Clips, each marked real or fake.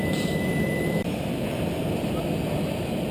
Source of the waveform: fake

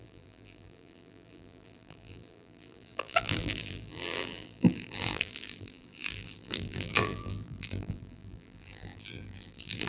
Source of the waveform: fake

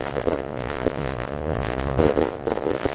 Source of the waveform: fake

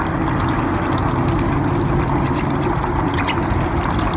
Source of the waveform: real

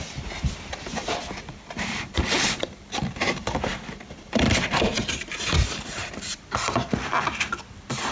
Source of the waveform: fake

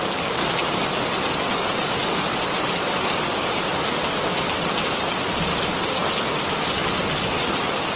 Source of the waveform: real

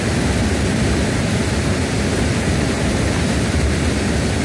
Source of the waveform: real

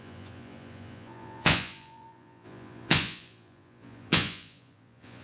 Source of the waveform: fake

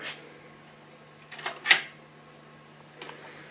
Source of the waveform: real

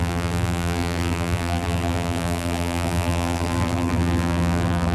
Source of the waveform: fake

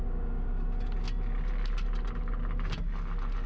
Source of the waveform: real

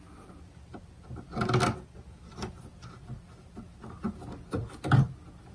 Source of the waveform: real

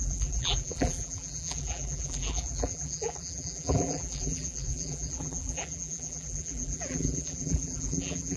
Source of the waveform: fake